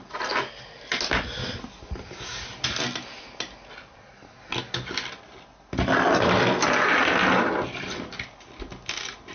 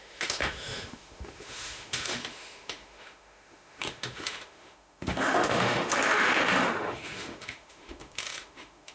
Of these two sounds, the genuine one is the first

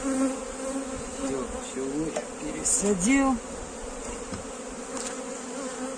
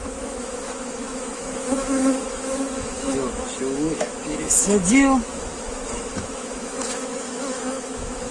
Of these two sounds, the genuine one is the first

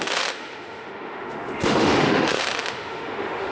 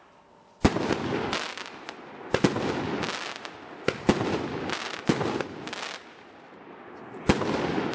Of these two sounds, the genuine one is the second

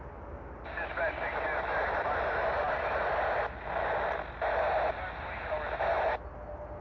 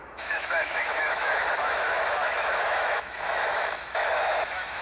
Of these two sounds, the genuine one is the first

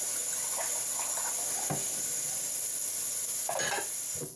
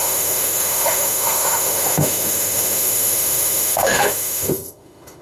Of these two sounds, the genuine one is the first